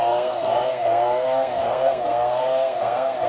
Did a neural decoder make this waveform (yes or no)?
yes